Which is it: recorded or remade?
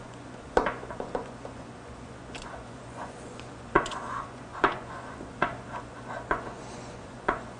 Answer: remade